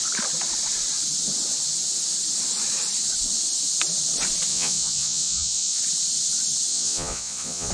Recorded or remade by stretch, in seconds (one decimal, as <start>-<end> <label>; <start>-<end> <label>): 0.0-4.5 recorded; 4.5-5.8 remade; 5.8-6.7 recorded; 6.7-7.7 remade